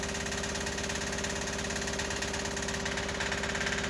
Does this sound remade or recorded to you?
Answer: recorded